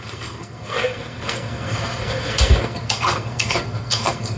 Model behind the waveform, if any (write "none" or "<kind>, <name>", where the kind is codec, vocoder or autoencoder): codec, SNAC